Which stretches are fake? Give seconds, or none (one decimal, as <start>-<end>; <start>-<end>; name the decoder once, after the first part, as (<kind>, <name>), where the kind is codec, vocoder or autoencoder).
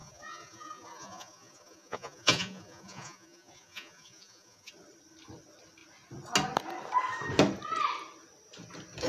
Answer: 0.0-4.7 (vocoder, Vocos)